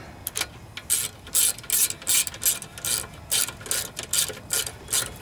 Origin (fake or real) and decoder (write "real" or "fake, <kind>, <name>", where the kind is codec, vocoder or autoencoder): real